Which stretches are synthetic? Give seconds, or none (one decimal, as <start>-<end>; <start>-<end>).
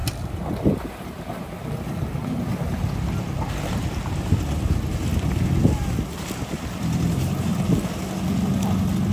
none